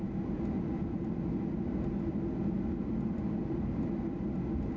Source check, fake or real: real